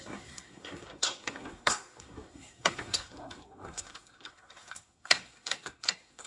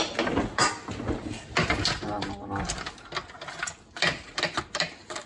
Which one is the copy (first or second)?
first